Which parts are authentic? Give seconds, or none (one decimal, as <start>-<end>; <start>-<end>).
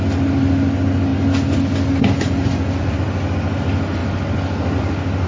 0.0-5.3